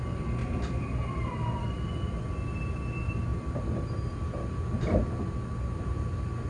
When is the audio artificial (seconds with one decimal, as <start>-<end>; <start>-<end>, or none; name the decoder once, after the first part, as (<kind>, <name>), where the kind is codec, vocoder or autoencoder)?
0.4-2.2 (vocoder, BigVGAN v2); 3.3-4.1